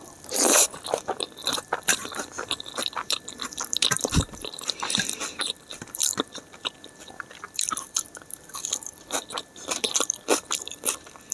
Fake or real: fake